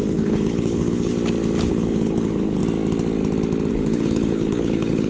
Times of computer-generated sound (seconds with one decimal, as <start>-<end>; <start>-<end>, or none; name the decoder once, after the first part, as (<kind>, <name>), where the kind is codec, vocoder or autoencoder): 0.0-1.1 (codec, HILCodec); 1.7-2.6; 3.7-5.1

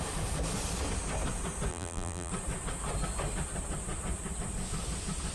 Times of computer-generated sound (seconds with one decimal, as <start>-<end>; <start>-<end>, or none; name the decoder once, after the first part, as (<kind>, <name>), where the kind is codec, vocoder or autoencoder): 1.7-2.3 (vocoder, BigVGAN v2)

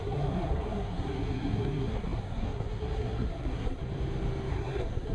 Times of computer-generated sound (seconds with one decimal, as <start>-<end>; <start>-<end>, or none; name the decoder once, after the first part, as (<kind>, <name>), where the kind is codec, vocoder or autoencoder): 0.0-3.8 (codec, SNAC); 4.5-5.1

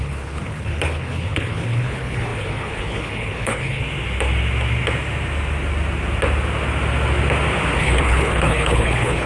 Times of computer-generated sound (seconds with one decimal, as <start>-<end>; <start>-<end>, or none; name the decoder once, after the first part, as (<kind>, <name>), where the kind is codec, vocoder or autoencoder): 0.0-3.8 (codec, HILCodec); 7.8-9.3

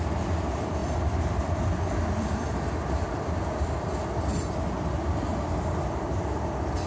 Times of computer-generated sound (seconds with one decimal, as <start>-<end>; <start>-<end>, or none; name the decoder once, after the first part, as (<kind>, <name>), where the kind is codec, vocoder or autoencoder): none